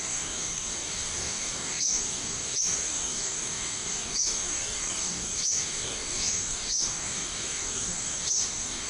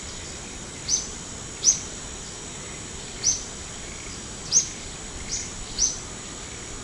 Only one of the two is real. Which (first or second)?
second